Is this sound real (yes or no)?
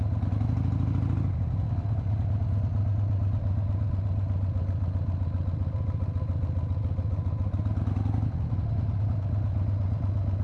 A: yes